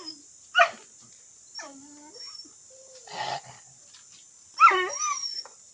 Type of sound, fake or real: real